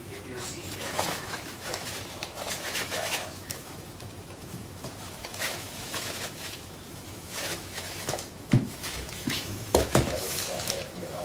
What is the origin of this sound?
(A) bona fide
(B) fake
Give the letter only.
B